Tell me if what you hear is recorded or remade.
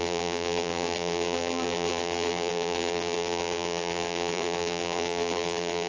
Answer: remade